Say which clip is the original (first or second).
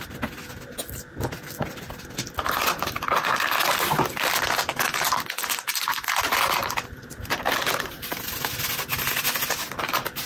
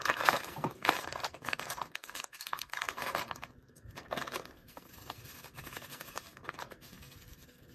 first